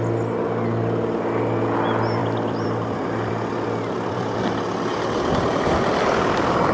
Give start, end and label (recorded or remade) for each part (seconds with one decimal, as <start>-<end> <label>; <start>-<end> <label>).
0.0-2.2 recorded; 2.2-4.4 remade; 4.4-4.9 recorded; 4.9-6.7 remade